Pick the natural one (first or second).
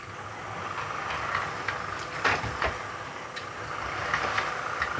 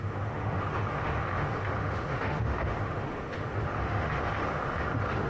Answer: first